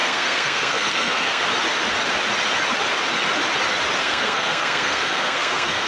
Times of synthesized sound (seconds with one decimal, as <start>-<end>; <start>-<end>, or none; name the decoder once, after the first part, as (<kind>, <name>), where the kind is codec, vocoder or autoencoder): 0.0-1.4 (codec, SNAC); 4.0-5.9